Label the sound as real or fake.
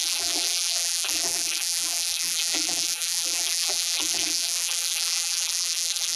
fake